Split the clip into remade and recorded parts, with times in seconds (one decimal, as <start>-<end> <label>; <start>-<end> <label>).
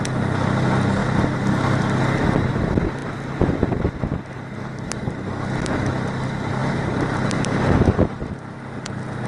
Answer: 0.0-6.6 recorded; 6.6-8.2 remade; 8.2-9.3 recorded